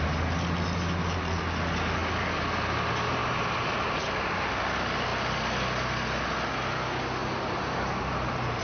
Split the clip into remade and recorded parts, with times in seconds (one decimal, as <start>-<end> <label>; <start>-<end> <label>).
0.0-3.2 recorded; 3.2-4.0 remade; 4.0-7.2 recorded; 7.2-8.6 remade